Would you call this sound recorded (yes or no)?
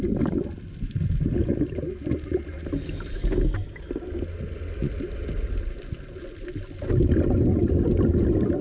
yes